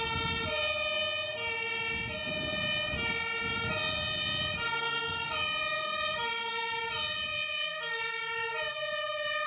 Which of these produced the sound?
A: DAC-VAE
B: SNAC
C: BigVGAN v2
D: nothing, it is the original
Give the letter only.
D